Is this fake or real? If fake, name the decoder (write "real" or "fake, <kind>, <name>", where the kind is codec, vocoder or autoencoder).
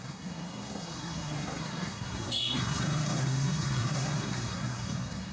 fake, codec, SNAC